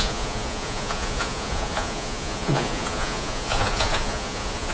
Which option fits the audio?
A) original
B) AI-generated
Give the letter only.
B